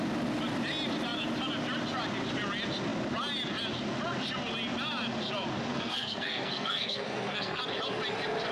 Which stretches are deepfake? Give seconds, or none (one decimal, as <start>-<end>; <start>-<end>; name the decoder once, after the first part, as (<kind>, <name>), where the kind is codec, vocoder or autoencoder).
5.7-7.6 (codec, SNAC)